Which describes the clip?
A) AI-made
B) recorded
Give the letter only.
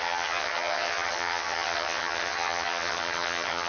A